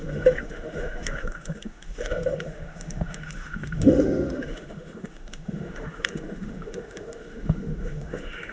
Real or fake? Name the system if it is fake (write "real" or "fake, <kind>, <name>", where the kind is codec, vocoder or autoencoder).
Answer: fake, autoencoder, DAC-VAE